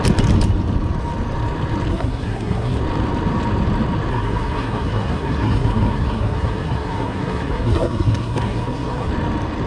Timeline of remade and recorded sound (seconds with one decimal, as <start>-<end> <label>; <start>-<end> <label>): 0.0-1.9 recorded; 1.9-2.8 remade; 2.8-4.1 recorded; 4.1-9.1 remade; 9.1-9.7 recorded